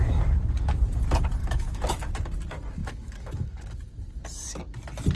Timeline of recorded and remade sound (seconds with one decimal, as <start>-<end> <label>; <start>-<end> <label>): 0.0-1.4 recorded; 1.4-2.1 remade; 2.1-2.8 recorded; 2.8-3.6 remade; 3.6-5.2 recorded